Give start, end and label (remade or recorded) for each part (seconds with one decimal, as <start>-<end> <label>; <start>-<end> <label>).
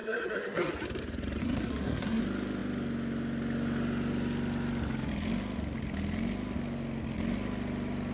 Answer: 0.0-0.7 remade; 0.7-1.4 recorded; 1.4-2.2 remade; 2.2-8.1 recorded